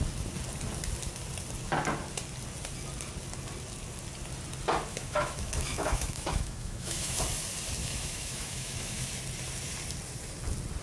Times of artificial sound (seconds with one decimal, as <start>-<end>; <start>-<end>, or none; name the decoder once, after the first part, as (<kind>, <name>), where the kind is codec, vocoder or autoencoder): 4.9-7.2 (autoencoder, DAC-VAE); 7.8-9.1